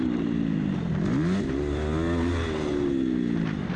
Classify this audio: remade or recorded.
recorded